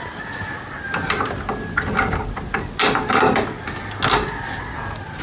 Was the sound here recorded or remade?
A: recorded